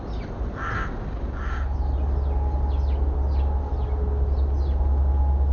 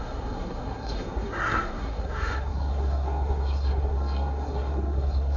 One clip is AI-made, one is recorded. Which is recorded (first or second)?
first